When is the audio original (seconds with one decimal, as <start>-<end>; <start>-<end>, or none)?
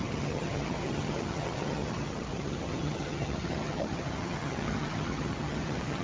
none